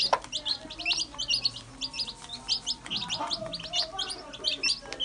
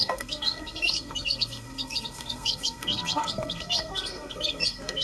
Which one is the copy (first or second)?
second